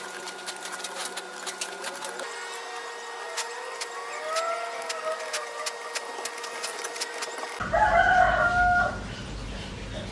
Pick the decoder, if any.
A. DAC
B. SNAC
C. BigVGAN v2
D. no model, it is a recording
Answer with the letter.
D